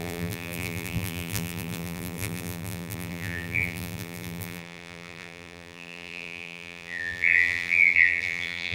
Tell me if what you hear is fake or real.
fake